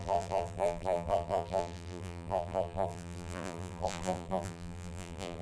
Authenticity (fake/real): fake